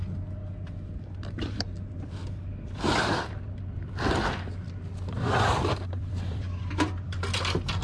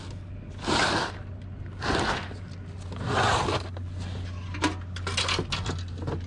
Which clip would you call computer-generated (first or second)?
first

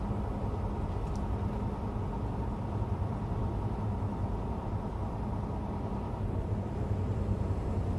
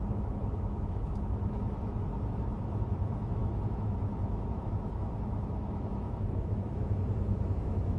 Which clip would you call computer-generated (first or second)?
second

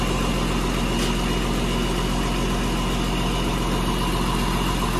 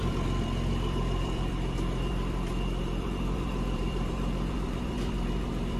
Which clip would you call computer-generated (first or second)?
second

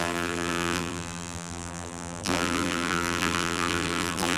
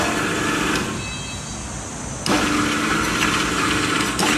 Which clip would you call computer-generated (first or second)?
first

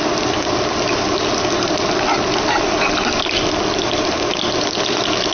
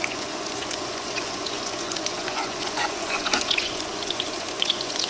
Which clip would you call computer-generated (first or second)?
second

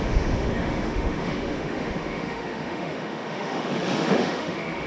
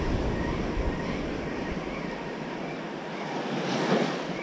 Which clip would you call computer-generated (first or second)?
first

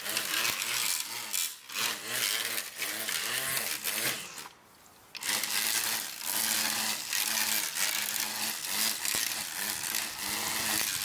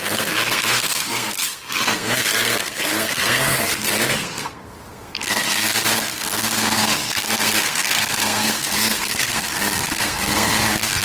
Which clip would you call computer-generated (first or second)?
second